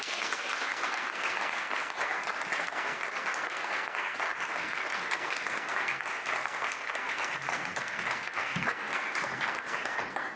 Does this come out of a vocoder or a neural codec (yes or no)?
yes